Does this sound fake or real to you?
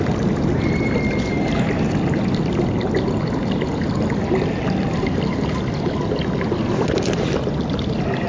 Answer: real